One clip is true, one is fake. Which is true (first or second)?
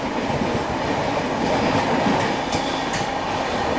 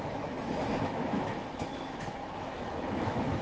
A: first